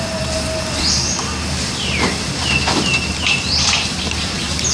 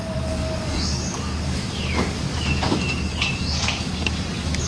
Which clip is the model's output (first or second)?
second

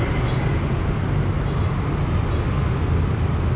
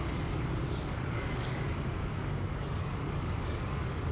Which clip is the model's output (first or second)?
second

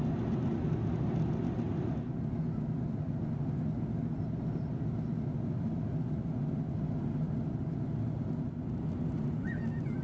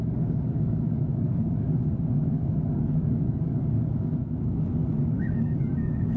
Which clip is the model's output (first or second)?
second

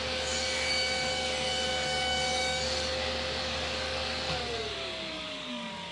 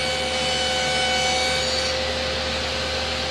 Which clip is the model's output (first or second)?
first